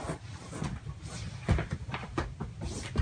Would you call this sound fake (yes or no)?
no